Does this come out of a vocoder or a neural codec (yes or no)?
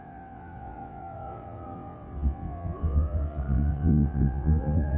yes